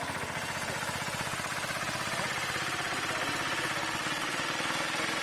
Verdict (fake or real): real